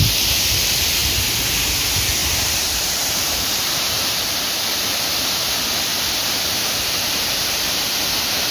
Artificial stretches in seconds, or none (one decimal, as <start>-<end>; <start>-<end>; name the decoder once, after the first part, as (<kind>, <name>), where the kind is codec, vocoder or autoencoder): 2.2-5.2 (vocoder, BigVGAN v2); 5.9-7.3